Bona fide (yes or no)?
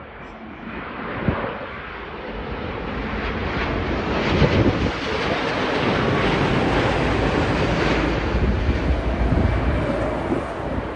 yes